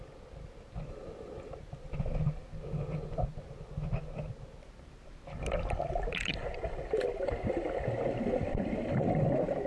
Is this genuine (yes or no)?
yes